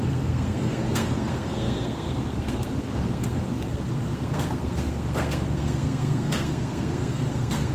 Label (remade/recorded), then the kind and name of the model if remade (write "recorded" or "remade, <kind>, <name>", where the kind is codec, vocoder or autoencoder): remade, codec, SNAC